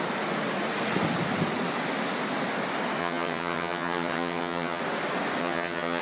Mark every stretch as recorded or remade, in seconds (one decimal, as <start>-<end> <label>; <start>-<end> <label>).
0.0-3.0 recorded; 3.0-4.8 remade; 4.8-5.4 recorded; 5.4-6.0 remade